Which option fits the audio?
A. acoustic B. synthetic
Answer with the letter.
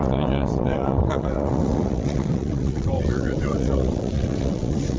B